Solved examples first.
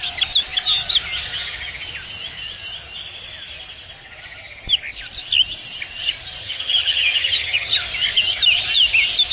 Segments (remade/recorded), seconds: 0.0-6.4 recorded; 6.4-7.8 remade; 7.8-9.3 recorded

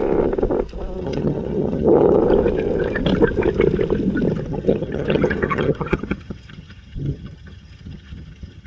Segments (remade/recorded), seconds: 0.0-1.0 recorded; 1.0-2.2 remade; 2.2-4.5 recorded; 4.5-8.7 remade

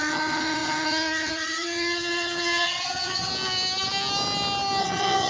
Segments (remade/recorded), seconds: 0.0-3.3 remade; 3.3-4.8 recorded; 4.8-5.3 remade

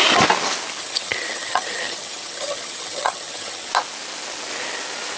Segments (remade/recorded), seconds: 0.0-0.8 recorded; 0.8-3.7 remade; 3.7-5.2 recorded